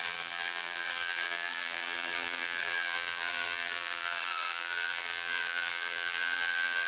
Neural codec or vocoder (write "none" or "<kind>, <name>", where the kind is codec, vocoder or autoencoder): vocoder, BigVGAN v2